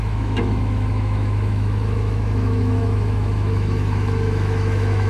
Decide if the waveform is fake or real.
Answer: fake